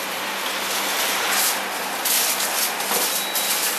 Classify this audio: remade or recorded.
recorded